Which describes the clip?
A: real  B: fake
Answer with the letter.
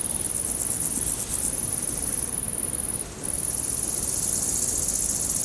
A